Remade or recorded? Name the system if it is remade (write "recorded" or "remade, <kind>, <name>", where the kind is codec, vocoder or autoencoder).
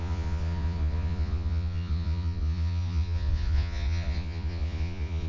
remade, vocoder, Vocos